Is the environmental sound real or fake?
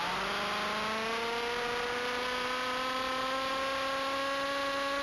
real